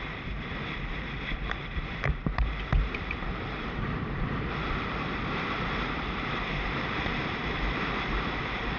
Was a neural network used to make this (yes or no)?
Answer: yes